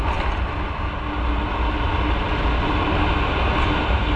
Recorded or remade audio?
recorded